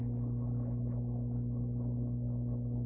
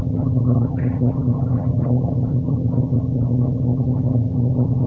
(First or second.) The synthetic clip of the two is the second